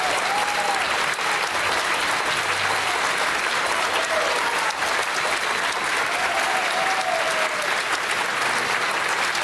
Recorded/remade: recorded